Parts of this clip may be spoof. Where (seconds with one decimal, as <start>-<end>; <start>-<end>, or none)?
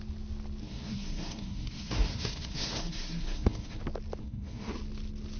0.6-3.8; 4.2-4.7